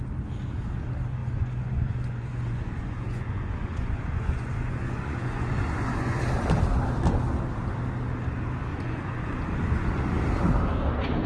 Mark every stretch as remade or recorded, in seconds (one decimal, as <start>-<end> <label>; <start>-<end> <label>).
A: 0.0-1.2 recorded; 1.2-6.2 remade; 6.2-8.7 recorded; 8.7-10.2 remade; 10.2-11.3 recorded